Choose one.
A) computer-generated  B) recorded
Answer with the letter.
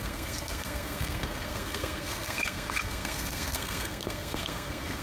A